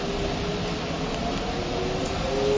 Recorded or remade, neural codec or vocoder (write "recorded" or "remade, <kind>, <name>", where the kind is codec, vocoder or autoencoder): recorded